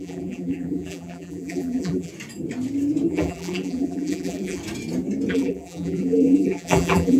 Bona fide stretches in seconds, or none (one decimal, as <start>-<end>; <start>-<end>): 2.1-3.1; 4.6-5.3

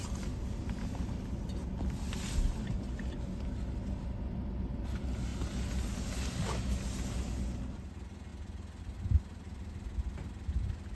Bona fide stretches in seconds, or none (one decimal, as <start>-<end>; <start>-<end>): 0.0-10.9

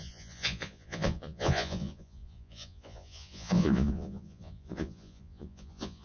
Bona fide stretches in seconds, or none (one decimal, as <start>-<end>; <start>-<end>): none

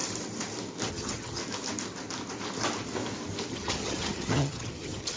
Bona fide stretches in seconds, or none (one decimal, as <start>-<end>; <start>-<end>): 0.0-0.9; 1.4-3.5

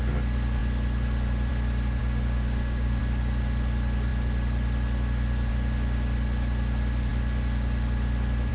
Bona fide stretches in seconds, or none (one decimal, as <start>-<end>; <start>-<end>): 0.0-2.0; 3.0-8.5

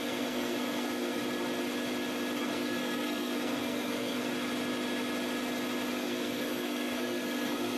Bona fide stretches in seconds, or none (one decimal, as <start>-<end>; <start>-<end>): 1.2-2.4; 4.3-5.9

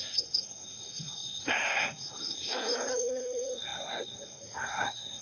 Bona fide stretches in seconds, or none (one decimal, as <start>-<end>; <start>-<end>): none

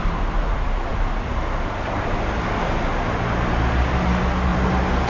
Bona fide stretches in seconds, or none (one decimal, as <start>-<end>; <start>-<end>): 0.0-4.5